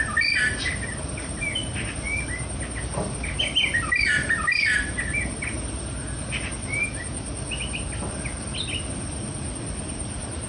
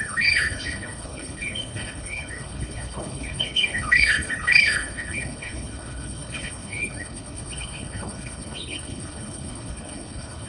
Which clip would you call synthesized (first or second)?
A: second